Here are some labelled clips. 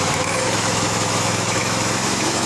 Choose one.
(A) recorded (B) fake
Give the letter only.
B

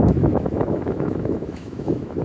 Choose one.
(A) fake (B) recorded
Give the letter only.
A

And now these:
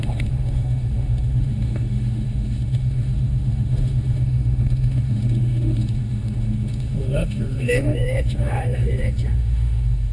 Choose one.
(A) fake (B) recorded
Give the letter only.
A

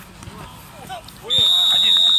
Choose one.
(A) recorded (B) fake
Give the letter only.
A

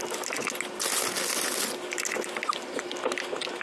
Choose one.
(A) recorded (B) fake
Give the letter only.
A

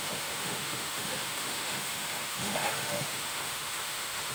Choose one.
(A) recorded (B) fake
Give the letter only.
B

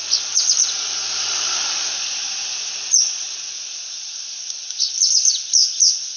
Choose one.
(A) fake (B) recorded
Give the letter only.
B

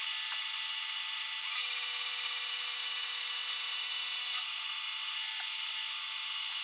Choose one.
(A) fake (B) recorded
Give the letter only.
B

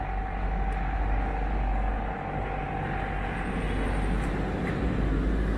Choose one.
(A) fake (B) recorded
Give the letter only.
B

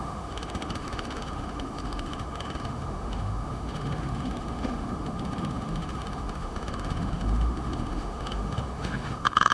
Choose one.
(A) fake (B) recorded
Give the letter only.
A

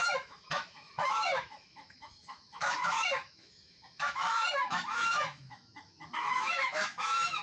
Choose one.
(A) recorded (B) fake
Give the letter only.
B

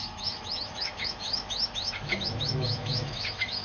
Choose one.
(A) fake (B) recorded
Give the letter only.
A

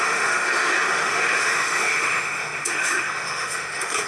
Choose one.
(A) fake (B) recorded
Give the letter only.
A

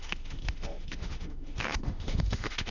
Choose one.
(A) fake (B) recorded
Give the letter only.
A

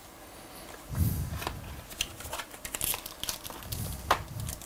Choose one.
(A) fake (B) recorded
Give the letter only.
B